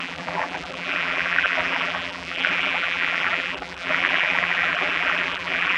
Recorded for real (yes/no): no